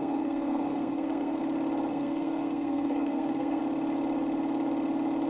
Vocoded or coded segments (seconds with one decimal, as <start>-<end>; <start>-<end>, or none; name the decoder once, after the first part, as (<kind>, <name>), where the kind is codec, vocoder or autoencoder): 0.0-1.4 (codec, SNAC); 1.9-3.6